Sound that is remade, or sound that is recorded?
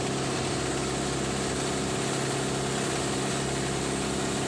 recorded